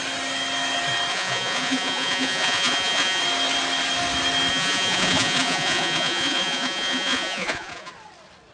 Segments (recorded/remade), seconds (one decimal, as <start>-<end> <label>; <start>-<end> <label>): 0.0-1.1 recorded; 1.1-3.2 remade; 3.2-4.5 recorded; 4.5-7.9 remade; 7.9-8.5 recorded